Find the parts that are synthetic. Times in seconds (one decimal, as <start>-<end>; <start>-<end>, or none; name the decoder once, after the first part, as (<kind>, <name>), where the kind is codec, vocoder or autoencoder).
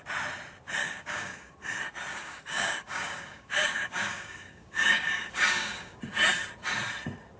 0.8-1.5 (codec, DAC); 2.1-6.0